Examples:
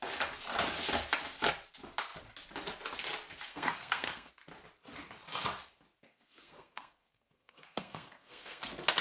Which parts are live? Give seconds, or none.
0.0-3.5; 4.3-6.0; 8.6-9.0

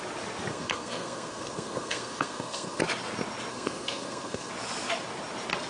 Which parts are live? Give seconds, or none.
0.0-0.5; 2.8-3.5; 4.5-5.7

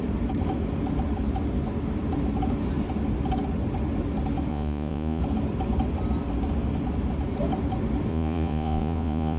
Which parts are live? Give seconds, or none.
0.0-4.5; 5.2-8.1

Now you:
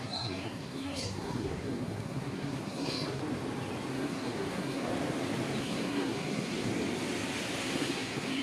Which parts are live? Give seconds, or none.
3.2-3.9; 4.9-5.6; 6.7-7.6